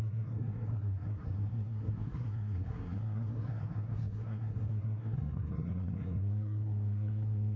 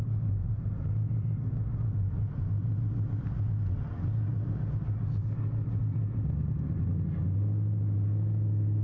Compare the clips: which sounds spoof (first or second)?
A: first